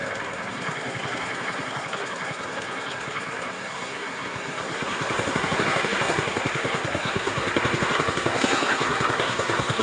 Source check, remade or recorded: remade